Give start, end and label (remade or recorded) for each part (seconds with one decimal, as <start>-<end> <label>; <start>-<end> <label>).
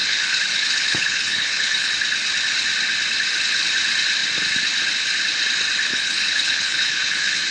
0.0-1.9 remade; 1.9-5.9 recorded; 5.9-7.5 remade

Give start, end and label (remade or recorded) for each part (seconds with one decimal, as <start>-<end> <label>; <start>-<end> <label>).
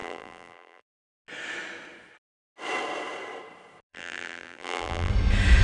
0.0-1.0 remade; 1.0-3.9 recorded; 3.9-5.1 remade; 5.1-5.6 recorded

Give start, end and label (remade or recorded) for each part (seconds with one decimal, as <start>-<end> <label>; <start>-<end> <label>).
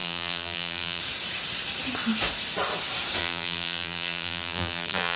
0.0-1.0 remade; 1.0-3.2 recorded; 3.2-5.2 remade